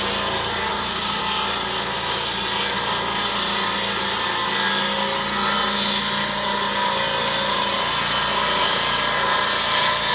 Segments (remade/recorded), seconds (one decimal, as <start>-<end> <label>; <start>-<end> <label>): 0.0-0.7 recorded; 0.7-1.2 remade; 1.2-10.1 recorded

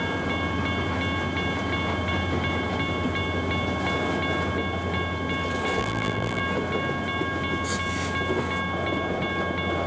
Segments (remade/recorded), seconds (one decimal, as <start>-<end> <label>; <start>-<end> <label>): 0.0-5.8 recorded; 5.8-6.4 remade; 6.4-9.9 recorded

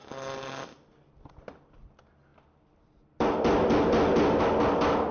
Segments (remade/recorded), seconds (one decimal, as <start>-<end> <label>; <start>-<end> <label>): 0.0-5.1 recorded

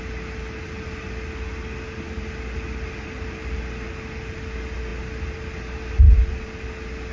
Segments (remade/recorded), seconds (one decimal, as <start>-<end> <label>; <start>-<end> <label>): 0.0-7.1 recorded

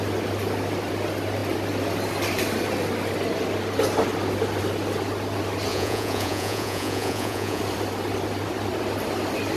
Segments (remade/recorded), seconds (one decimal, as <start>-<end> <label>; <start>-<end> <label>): 0.0-5.7 recorded; 5.7-7.6 remade; 7.6-9.6 recorded

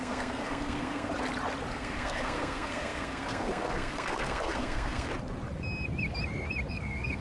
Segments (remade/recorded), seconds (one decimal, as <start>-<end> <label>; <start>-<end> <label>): 0.0-1.1 remade; 1.1-1.7 recorded; 1.7-5.1 remade; 5.1-6.7 recorded; 6.7-7.2 remade

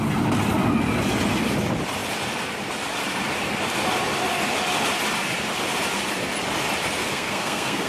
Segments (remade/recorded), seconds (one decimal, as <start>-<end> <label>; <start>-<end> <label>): 0.0-7.0 recorded; 7.0-7.9 remade

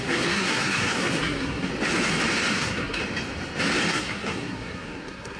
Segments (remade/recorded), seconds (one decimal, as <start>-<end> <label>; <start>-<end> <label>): 0.0-1.7 remade; 1.7-2.5 recorded; 2.5-3.0 remade; 3.0-3.9 recorded; 3.9-5.4 remade